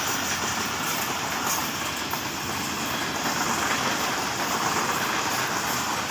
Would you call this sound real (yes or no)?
yes